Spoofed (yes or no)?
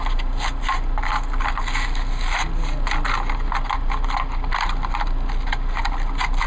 no